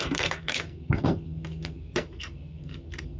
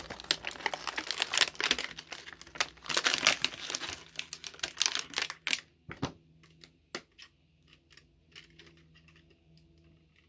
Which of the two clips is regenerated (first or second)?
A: first